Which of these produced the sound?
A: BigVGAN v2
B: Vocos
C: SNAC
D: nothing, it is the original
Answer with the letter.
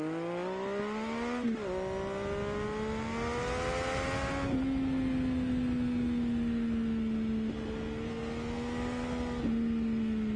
D